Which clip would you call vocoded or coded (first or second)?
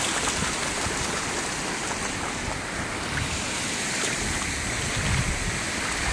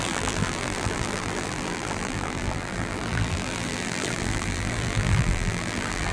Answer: second